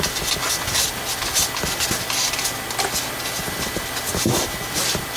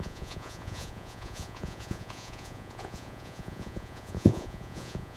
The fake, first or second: second